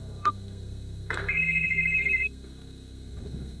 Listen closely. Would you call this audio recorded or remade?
remade